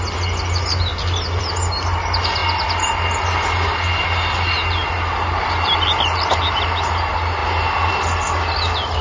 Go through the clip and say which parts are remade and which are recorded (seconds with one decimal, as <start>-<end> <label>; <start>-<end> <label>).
0.0-9.0 recorded